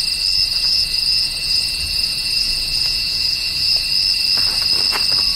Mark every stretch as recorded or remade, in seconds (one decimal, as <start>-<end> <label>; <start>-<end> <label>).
0.0-0.5 recorded; 0.5-3.7 remade; 3.7-5.4 recorded